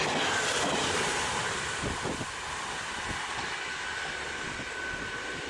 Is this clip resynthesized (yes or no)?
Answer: no